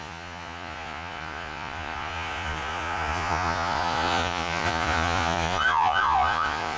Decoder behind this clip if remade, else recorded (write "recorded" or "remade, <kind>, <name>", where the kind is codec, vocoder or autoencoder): remade, vocoder, Vocos